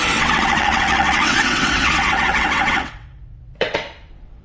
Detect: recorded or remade remade